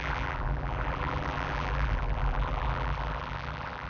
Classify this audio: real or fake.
fake